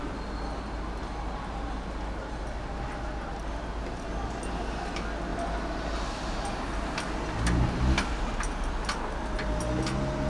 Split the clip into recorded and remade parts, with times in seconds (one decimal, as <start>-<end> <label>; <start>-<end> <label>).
0.0-10.3 recorded